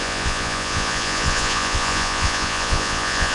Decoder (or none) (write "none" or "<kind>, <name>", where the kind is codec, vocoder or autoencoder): vocoder, Vocos